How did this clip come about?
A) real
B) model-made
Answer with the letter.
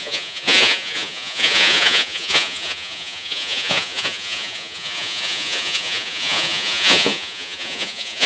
B